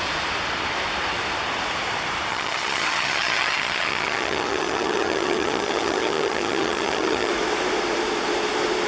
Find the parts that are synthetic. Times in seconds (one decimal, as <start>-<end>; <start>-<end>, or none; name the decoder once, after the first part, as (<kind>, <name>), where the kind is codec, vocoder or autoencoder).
2.3-7.3 (vocoder, HiFi-GAN)